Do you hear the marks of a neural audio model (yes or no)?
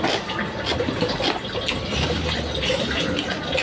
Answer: no